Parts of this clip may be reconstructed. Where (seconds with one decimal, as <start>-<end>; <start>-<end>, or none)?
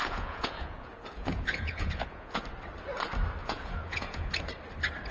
0.0-2.4; 3.4-4.3